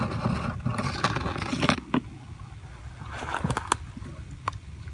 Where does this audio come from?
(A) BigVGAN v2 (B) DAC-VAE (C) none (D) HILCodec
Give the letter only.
C